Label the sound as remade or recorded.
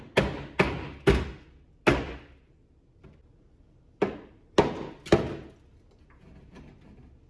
recorded